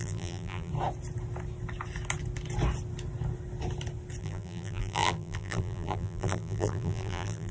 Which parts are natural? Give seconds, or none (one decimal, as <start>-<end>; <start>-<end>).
0.7-4.2

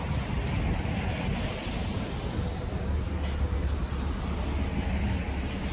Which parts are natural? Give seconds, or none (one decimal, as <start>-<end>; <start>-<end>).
0.0-5.7

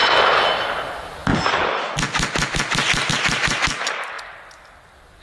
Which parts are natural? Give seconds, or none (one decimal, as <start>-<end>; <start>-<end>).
0.0-5.2